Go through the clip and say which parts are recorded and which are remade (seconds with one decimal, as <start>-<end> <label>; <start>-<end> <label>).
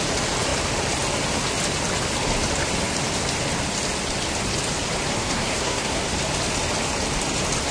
0.0-5.2 recorded; 5.2-6.0 remade; 6.0-7.7 recorded